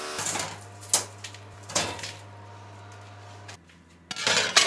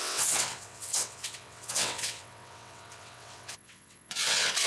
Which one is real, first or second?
first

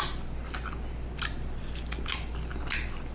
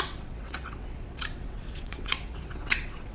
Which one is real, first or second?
first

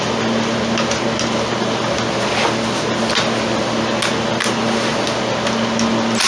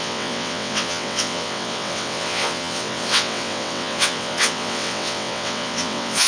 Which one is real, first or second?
first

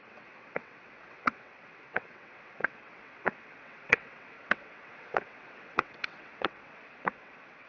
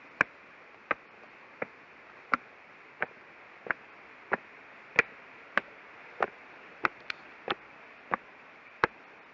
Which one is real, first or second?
second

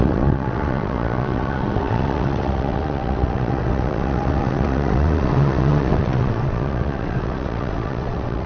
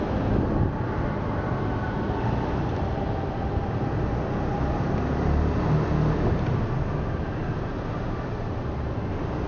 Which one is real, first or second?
second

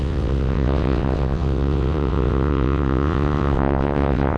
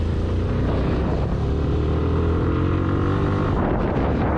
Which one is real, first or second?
second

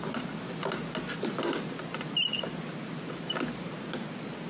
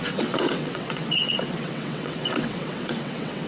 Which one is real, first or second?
first